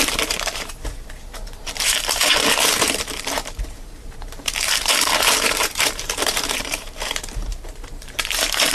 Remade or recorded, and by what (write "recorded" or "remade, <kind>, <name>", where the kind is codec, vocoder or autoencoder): remade, vocoder, BigVGAN v2